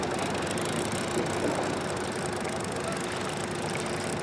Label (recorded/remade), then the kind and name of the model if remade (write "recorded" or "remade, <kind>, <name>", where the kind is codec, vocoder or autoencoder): recorded